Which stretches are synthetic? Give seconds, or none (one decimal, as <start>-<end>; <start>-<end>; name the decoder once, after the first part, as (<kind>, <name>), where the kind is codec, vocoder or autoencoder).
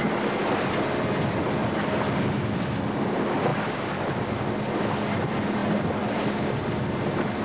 none